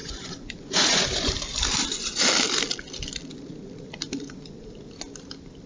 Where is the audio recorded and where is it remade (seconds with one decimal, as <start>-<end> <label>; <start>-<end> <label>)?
0.0-1.3 remade; 1.3-5.7 recorded